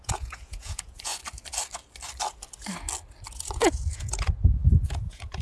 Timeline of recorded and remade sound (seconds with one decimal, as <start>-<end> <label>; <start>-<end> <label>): 0.0-1.1 remade; 1.1-3.5 recorded; 3.5-5.4 remade